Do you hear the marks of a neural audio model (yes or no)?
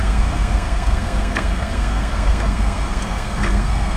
yes